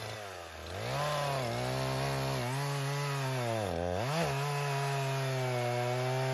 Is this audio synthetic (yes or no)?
no